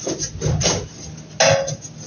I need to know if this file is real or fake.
real